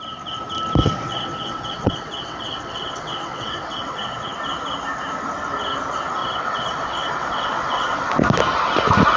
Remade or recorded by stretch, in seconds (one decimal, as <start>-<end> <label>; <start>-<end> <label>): 0.0-0.8 recorded; 0.8-4.3 remade; 4.3-6.2 recorded; 6.2-8.1 remade; 8.1-9.2 recorded